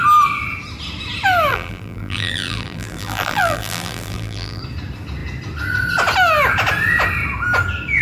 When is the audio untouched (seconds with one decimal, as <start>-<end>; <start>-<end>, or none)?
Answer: 0.0-1.5; 4.6-8.0